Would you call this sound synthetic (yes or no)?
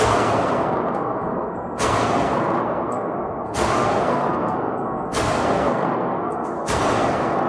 yes